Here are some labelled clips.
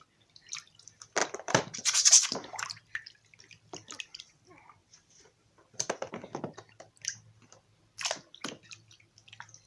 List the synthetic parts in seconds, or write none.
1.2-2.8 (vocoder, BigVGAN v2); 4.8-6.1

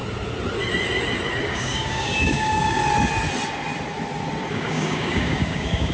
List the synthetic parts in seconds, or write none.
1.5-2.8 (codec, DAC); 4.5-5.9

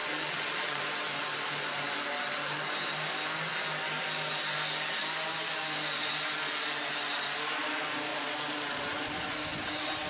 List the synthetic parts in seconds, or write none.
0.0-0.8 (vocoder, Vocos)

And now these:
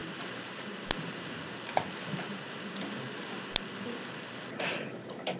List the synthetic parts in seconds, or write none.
none